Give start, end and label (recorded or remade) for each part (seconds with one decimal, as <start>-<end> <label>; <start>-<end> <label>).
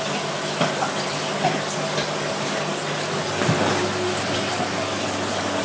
0.0-5.6 recorded